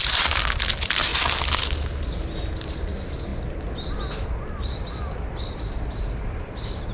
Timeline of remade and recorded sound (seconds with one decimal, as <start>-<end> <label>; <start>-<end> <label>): 0.0-6.9 recorded